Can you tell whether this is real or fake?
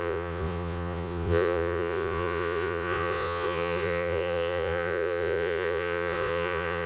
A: fake